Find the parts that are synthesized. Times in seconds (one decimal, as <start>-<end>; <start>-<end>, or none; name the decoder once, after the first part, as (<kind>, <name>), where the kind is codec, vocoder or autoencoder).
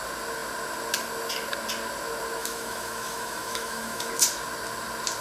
2.4-4.1 (autoencoder, DAC-VAE)